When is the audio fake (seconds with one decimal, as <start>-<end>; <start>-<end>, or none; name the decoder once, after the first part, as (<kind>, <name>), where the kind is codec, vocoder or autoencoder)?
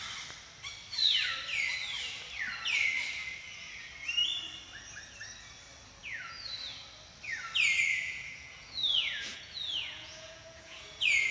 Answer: 6.0-6.5 (vocoder, Vocos); 7.9-11.3